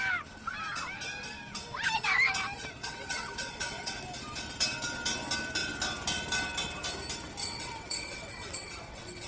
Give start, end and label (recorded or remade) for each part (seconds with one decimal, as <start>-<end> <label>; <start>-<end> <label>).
0.0-2.8 recorded; 2.8-4.0 remade; 4.0-7.4 recorded; 7.4-9.3 remade